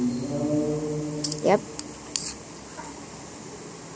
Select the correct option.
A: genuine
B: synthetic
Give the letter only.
A